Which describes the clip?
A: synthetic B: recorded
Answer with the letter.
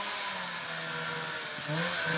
B